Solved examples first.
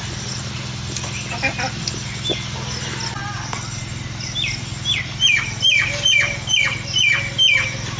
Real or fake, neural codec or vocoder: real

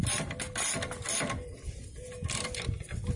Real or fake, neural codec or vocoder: real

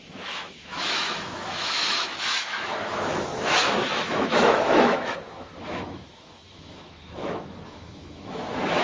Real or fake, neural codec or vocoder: fake, autoencoder, DAC-VAE